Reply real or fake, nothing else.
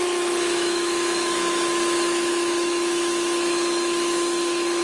fake